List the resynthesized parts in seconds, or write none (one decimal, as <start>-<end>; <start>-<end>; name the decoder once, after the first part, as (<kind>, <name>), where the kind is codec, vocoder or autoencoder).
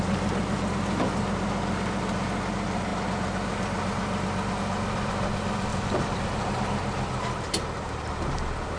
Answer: 5.7-6.6 (vocoder, BigVGAN v2)